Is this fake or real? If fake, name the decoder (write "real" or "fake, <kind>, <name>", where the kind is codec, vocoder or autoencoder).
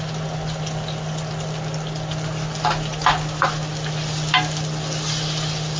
real